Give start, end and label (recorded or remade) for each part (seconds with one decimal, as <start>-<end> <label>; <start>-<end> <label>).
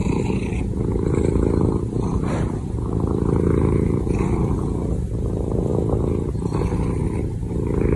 0.0-5.7 remade; 5.7-7.5 recorded; 7.5-8.0 remade